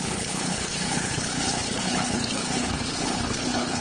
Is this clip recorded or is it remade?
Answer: remade